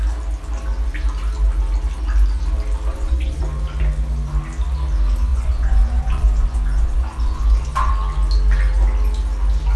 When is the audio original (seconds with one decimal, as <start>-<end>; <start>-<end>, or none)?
0.0-2.9; 3.4-5.3; 7.9-9.8